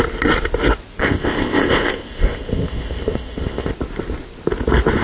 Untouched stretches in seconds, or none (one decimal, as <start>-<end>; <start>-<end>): 0.0-1.0; 3.7-5.0